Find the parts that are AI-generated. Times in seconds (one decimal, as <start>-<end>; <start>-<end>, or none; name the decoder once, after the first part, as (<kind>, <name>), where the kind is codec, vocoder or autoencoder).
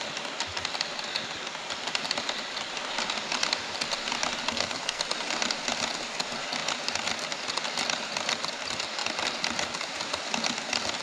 4.5-5.0 (codec, SNAC)